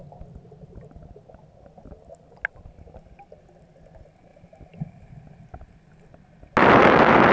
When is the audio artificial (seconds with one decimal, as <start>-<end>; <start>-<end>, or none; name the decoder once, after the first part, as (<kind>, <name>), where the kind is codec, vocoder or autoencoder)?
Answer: none